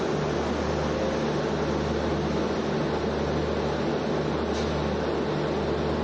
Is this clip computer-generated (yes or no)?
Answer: no